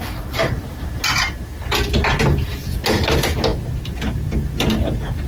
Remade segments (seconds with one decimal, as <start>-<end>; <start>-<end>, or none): none